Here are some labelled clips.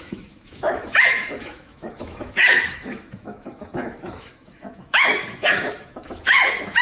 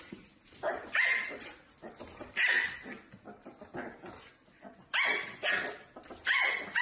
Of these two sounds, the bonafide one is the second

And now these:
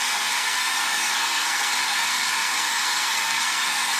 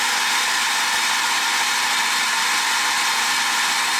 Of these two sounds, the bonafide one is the second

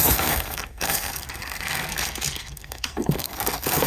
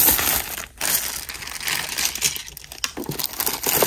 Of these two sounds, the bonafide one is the second